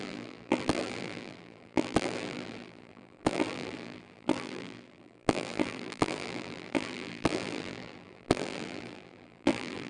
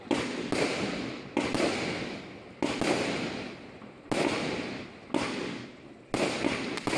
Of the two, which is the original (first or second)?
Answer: second